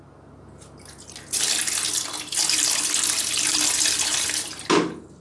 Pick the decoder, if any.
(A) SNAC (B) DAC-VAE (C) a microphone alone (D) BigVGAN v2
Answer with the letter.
C